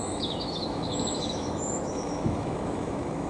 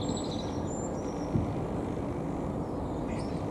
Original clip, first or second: second